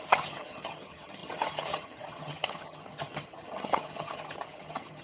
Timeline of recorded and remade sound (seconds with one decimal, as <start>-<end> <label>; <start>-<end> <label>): 0.0-5.0 remade